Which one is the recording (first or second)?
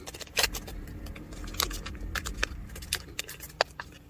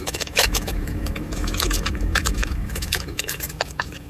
first